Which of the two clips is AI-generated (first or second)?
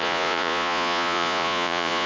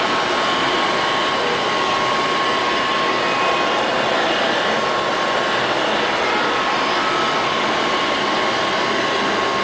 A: first